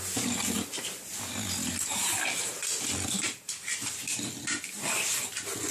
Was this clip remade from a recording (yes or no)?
no